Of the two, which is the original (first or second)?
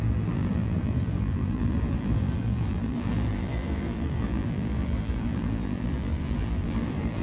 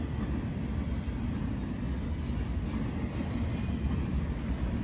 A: second